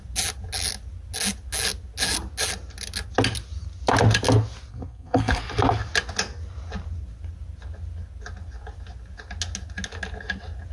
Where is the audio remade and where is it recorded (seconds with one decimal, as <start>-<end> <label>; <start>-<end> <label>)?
0.0-4.7 recorded; 4.7-5.4 remade; 5.4-10.7 recorded